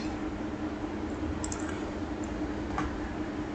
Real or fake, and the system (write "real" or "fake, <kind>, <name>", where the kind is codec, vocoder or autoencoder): real